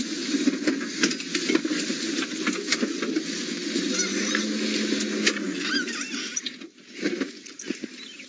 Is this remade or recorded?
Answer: recorded